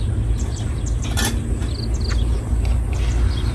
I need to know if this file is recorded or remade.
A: recorded